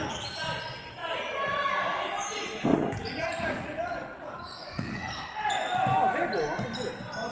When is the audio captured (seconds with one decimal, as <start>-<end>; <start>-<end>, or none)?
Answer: 0.0-2.7; 5.1-7.3